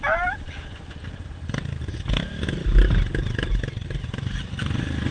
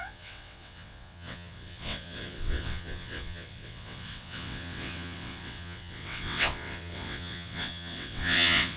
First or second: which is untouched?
first